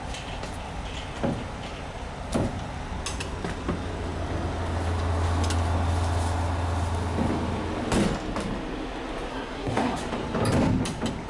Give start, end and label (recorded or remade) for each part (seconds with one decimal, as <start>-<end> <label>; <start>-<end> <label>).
0.0-9.3 recorded; 9.3-10.0 remade; 10.0-11.3 recorded